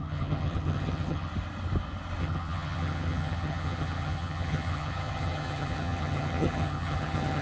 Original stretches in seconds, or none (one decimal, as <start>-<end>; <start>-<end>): 1.3-2.2